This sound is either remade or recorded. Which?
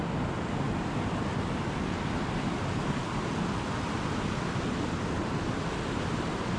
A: recorded